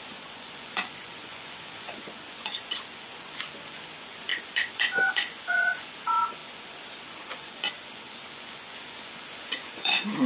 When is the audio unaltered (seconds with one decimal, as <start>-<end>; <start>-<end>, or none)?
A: none